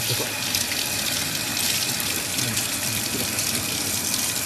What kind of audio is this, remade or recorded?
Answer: remade